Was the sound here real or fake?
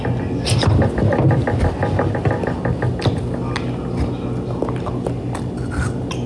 real